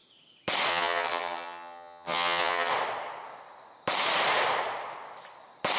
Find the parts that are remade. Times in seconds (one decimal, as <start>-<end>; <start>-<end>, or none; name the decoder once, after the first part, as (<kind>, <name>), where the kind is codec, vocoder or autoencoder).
0.7-2.7 (vocoder, HiFi-GAN)

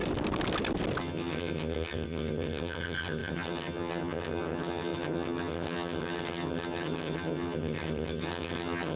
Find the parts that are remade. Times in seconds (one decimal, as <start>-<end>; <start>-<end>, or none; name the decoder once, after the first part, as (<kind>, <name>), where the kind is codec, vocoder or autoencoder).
1.0-9.0 (vocoder, HiFi-GAN)

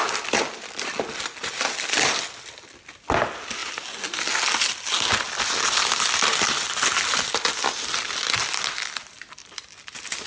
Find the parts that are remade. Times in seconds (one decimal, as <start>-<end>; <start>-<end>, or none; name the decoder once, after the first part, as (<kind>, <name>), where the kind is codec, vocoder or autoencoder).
none